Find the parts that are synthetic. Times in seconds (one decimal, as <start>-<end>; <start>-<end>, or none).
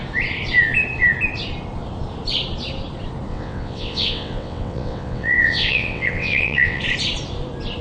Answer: 3.3-6.8